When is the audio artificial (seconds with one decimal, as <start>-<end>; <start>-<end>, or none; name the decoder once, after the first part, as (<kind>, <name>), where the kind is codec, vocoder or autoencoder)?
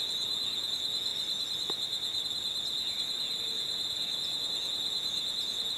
0.0-1.1 (vocoder, Vocos); 3.4-5.8